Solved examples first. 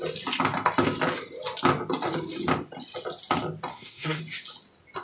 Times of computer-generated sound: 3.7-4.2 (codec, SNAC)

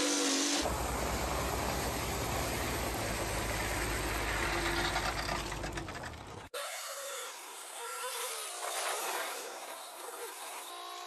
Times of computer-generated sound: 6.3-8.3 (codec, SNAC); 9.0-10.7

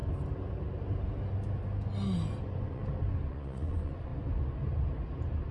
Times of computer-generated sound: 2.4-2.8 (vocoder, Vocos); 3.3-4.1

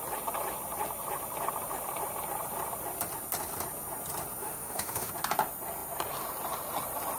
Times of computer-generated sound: 4.4-5.1 (autoencoder, DAC-VAE)

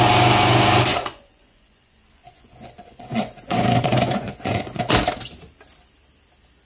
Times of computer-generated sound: 0.9-4.9 (vocoder, Vocos)